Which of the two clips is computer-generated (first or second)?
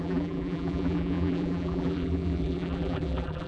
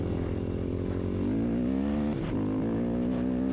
first